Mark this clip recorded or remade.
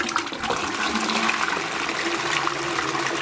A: recorded